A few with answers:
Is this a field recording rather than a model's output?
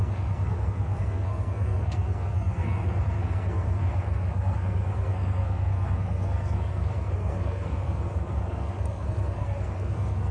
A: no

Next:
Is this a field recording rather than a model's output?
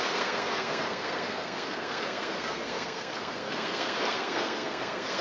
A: no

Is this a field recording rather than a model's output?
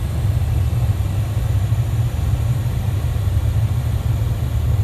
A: yes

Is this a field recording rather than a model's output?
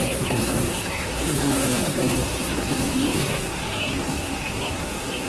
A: no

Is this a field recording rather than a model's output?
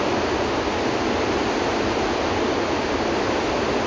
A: yes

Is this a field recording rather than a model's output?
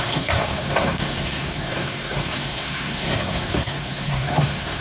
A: no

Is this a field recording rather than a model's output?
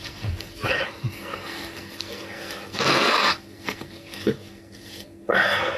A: no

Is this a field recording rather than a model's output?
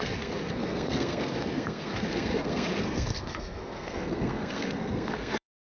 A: no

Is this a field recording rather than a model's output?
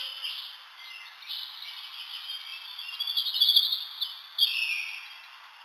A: yes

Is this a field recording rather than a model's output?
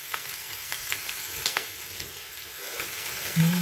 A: no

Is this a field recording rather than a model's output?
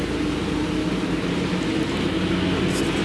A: yes